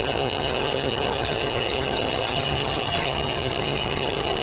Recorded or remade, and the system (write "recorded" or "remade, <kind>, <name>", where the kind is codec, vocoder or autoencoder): remade, vocoder, HiFi-GAN